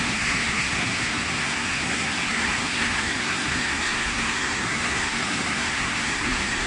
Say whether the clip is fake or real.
fake